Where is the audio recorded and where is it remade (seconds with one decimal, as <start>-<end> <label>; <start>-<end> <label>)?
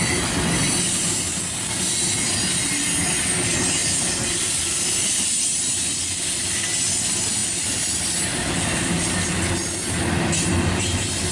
0.0-3.8 recorded; 3.8-4.6 remade; 4.6-7.4 recorded; 7.4-8.2 remade; 8.2-11.3 recorded